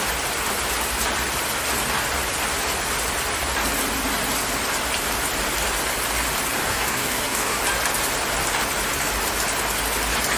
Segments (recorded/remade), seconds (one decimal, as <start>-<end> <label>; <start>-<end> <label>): 0.0-6.7 recorded; 6.7-7.6 remade; 7.6-10.4 recorded